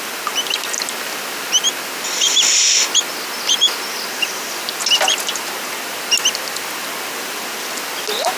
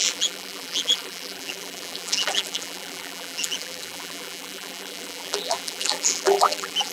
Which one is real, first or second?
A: first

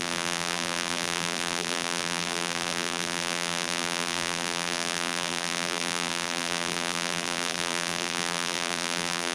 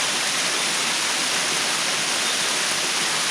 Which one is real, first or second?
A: second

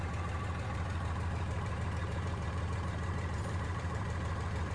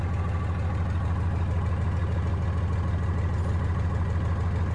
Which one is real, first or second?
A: second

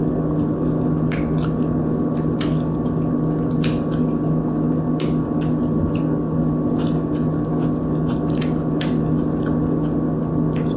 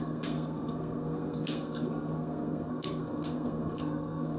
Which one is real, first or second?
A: first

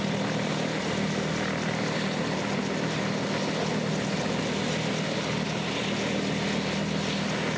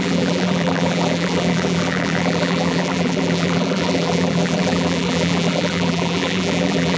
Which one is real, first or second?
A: first